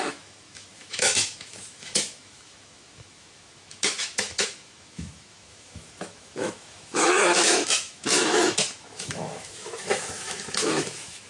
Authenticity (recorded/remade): remade